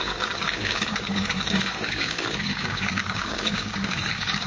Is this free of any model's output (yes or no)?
no